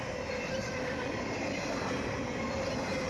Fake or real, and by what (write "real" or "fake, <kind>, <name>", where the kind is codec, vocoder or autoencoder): real